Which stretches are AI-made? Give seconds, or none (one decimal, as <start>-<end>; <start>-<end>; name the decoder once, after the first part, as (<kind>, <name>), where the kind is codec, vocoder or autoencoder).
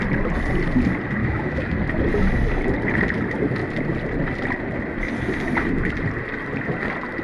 1.2-1.7 (autoencoder, DAC-VAE)